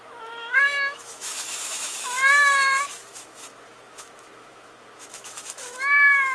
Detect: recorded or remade remade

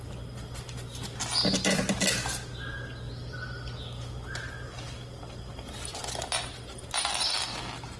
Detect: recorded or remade recorded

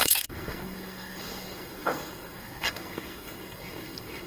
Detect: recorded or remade remade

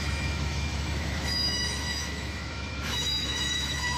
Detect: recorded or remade remade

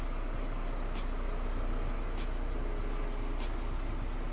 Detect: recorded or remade recorded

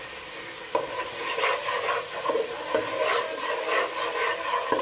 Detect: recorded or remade recorded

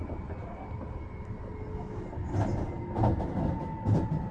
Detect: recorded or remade recorded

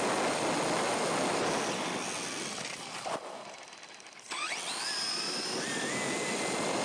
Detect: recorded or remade recorded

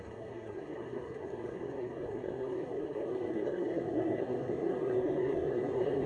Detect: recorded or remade remade